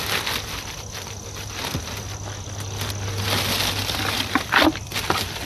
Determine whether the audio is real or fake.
real